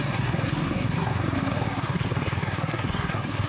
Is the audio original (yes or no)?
no